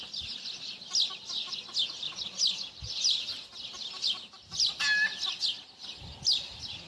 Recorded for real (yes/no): yes